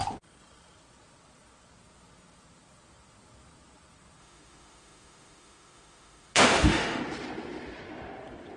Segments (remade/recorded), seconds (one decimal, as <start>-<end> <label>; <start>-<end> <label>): 0.0-4.2 recorded; 4.2-7.0 remade; 7.0-8.6 recorded